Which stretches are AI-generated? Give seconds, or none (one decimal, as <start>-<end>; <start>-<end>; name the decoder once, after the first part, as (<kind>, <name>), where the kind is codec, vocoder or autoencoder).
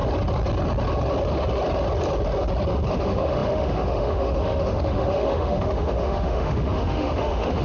2.9-7.6 (autoencoder, DAC-VAE)